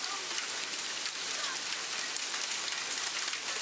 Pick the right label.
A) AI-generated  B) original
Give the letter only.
B